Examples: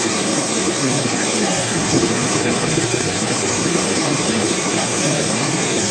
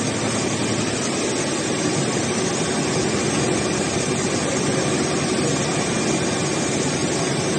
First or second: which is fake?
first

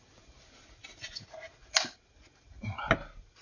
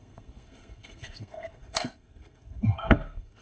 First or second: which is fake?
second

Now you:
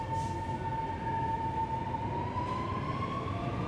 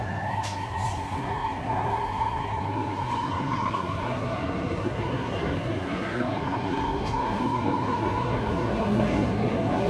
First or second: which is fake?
second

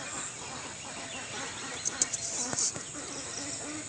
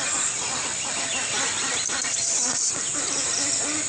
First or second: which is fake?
second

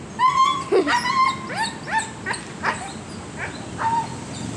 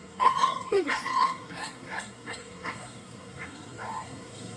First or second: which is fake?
second